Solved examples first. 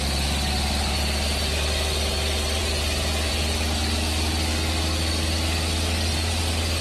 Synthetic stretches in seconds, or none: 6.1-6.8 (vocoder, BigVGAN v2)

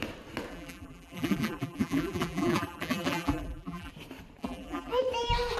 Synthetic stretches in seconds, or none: 0.5-3.9 (vocoder, BigVGAN v2); 4.4-5.0